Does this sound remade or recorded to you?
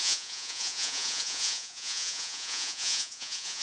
remade